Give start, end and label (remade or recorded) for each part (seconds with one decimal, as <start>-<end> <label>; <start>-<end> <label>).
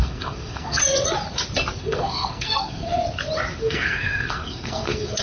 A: 0.0-0.8 remade; 0.8-1.8 recorded; 1.8-3.0 remade; 3.0-3.6 recorded; 3.6-5.2 remade